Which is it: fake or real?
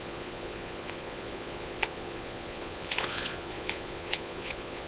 fake